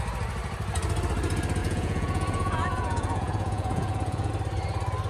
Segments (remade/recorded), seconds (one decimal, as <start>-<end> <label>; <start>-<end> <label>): 0.0-1.6 recorded; 1.6-4.3 remade; 4.3-5.1 recorded